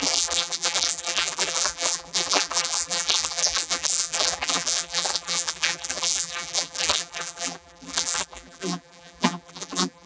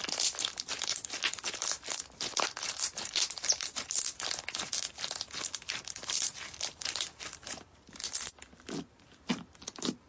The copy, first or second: first